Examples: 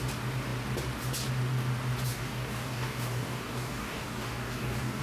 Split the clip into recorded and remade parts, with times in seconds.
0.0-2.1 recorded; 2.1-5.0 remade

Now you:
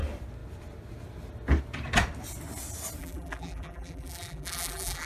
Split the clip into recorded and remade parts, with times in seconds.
0.0-3.0 recorded; 3.0-5.1 remade

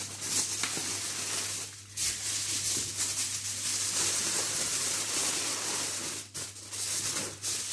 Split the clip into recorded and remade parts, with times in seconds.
0.0-4.2 recorded; 4.2-5.7 remade; 5.7-7.7 recorded